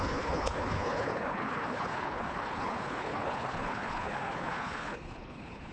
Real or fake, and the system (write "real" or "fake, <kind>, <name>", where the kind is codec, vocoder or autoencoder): fake, codec, HILCodec